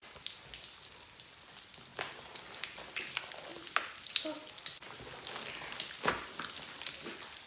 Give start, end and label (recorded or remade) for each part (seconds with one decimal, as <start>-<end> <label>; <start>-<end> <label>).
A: 0.0-7.5 recorded

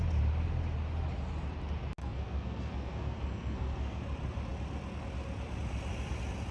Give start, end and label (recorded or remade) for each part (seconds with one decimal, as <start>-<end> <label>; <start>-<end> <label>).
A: 0.0-2.0 recorded; 2.0-4.0 remade; 4.0-6.5 recorded